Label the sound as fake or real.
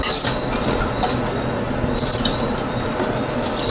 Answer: real